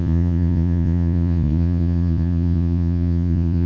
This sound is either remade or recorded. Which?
remade